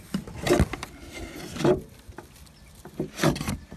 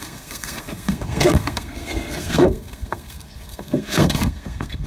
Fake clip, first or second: second